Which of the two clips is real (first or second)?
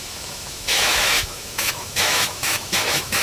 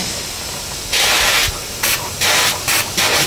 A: second